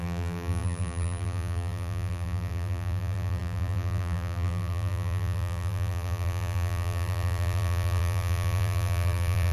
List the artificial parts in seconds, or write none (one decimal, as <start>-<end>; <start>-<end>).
0.0-9.5